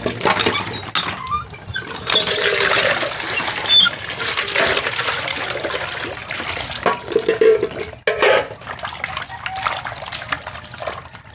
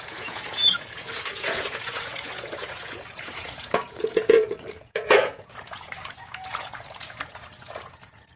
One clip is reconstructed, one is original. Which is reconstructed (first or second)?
second